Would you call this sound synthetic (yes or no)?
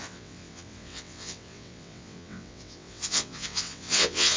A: yes